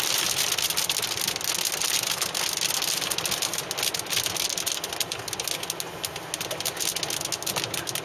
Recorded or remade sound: recorded